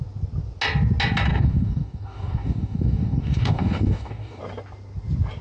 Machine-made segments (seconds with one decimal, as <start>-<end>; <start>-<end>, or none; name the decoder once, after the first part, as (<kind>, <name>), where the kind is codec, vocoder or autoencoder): 1.3-4.4 (codec, DAC)